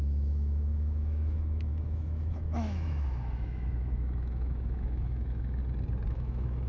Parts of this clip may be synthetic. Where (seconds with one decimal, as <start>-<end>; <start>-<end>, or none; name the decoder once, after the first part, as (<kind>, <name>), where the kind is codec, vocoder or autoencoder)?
0.0-5.6 (autoencoder, DAC-VAE); 6.1-6.7

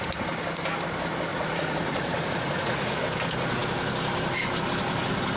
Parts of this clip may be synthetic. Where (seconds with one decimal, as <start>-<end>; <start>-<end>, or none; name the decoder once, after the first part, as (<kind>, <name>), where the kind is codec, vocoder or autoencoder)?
1.3-3.0 (vocoder, Vocos)

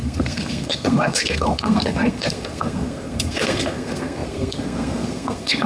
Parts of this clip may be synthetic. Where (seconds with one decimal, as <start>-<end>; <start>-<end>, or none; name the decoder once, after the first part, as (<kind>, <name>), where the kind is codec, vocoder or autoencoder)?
0.0-5.7 (codec, SNAC)

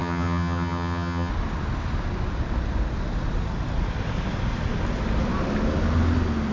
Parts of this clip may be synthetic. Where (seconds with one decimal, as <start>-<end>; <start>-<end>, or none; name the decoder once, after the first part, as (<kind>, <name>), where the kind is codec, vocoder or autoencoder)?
0.0-1.3 (vocoder, HiFi-GAN)

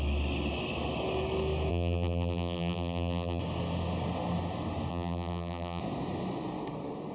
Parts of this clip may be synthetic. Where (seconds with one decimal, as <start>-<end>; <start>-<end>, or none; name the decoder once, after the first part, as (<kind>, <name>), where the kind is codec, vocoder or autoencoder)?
1.7-3.4 (vocoder, BigVGAN v2); 4.9-5.8

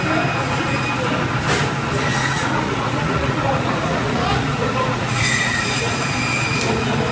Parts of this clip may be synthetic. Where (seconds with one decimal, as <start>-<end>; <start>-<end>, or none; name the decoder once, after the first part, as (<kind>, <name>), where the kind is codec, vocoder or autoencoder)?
2.1-6.1 (vocoder, Vocos)

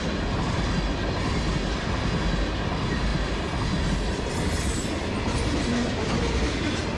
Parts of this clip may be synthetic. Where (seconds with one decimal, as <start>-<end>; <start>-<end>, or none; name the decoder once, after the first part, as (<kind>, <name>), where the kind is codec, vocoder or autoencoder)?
none

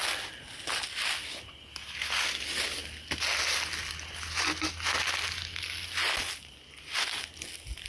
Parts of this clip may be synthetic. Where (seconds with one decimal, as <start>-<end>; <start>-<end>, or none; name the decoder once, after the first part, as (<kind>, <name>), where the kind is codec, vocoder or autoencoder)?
none